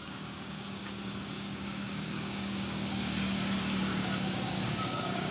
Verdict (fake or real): fake